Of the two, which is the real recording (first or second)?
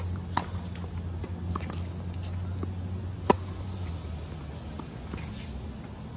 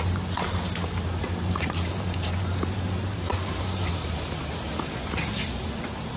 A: first